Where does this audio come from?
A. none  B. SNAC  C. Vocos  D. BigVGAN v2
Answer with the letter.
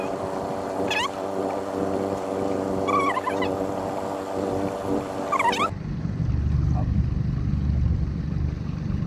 A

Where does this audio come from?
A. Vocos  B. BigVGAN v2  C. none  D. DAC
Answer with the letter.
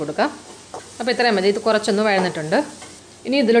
C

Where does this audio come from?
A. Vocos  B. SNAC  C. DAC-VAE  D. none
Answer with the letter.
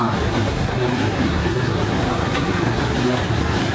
B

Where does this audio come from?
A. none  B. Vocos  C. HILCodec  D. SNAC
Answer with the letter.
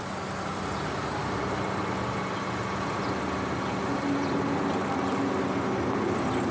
A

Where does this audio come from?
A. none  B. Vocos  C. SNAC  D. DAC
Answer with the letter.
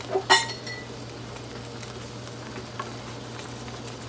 A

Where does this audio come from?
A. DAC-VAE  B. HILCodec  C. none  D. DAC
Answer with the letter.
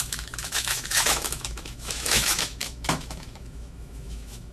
A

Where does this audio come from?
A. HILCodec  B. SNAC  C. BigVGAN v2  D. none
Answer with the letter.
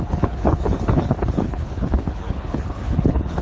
A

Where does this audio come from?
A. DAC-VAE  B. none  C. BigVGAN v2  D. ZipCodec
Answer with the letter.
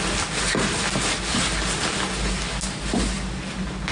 B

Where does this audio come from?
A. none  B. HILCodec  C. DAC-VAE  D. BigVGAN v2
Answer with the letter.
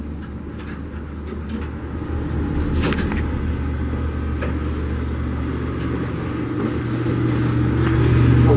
A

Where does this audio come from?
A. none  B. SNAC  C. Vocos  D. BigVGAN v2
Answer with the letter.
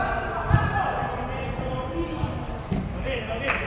A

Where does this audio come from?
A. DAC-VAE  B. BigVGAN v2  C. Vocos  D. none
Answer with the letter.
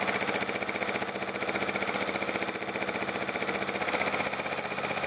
D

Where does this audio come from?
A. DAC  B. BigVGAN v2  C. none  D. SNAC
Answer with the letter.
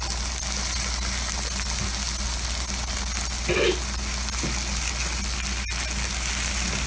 C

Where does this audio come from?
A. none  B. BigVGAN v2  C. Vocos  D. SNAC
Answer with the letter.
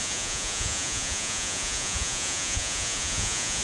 C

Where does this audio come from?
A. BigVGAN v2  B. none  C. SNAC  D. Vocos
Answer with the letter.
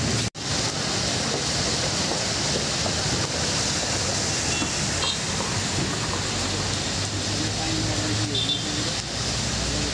B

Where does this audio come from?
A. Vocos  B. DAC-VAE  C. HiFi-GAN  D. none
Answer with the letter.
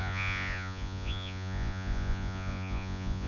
A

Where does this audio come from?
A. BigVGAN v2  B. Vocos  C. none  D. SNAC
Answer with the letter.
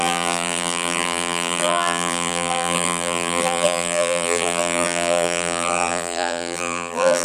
A